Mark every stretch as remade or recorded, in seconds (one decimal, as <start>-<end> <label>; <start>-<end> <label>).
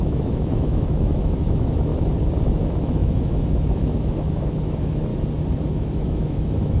0.0-1.9 remade; 1.9-2.5 recorded; 2.5-5.1 remade; 5.1-5.6 recorded; 5.6-6.8 remade